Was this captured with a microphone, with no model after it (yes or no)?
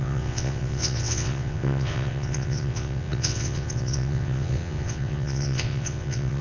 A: no